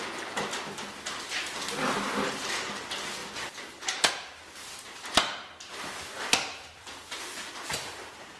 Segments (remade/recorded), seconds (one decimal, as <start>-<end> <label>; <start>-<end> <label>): 0.0-8.4 recorded